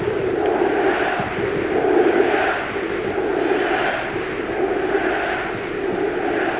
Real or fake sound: real